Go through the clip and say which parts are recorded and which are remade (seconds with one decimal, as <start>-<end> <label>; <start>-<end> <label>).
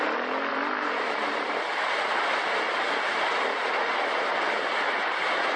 0.0-0.5 recorded; 0.5-1.6 remade; 1.6-5.6 recorded